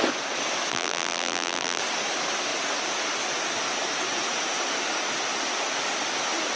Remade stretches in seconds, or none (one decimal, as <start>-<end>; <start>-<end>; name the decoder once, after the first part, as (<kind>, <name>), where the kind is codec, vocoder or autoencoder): 0.7-1.8 (vocoder, BigVGAN v2)